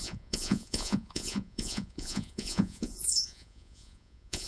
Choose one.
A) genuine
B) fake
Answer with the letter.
B